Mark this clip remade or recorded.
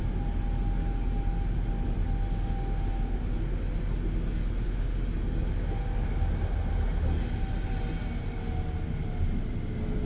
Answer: recorded